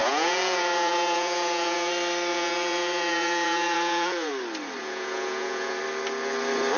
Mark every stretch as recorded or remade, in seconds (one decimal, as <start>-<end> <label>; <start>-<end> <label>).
0.0-1.9 remade; 1.9-2.3 recorded; 2.3-4.3 remade; 4.3-4.8 recorded; 4.8-5.8 remade; 5.8-6.8 recorded